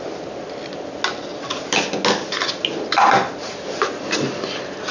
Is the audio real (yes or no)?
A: yes